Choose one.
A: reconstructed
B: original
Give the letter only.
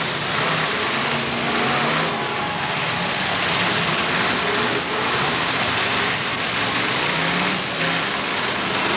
B